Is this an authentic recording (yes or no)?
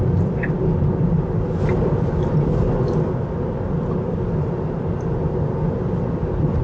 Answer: yes